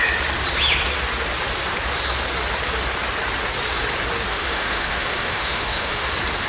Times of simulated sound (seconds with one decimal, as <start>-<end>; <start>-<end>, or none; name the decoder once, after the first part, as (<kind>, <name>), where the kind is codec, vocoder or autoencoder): 4.3-6.1 (autoencoder, DAC-VAE)